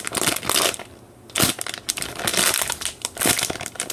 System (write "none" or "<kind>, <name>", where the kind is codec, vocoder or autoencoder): none